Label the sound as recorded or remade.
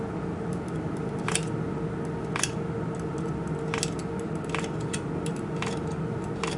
recorded